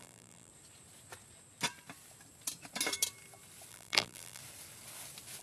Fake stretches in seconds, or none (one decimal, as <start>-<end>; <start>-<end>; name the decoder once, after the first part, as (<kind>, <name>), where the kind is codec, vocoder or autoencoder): 0.0-0.5 (vocoder, BigVGAN v2); 3.7-4.4